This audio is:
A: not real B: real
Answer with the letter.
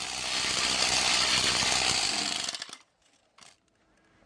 B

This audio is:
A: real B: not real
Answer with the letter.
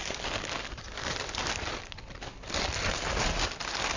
A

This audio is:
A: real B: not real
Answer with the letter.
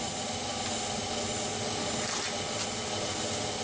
A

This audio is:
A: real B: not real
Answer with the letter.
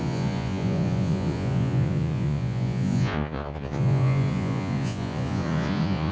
B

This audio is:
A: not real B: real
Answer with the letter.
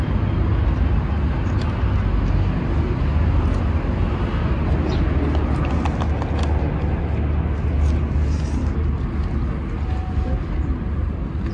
B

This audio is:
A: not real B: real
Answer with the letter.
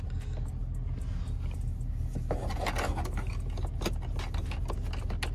B